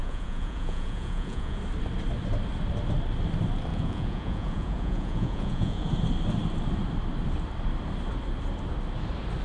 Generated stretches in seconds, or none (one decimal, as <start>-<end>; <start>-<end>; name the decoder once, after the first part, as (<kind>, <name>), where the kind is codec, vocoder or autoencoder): 0.0-1.6 (vocoder, Vocos); 3.7-5.9